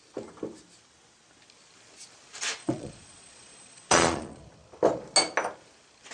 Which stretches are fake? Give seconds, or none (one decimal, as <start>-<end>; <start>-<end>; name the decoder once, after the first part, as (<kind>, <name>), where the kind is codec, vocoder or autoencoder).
2.6-4.4 (vocoder, Vocos)